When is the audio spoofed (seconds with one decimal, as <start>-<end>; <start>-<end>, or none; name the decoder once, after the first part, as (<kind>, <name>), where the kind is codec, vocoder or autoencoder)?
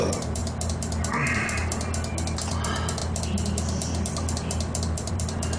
0.0-0.4 (vocoder, BigVGAN v2); 1.0-1.6; 2.5-3.0; 5.1-5.6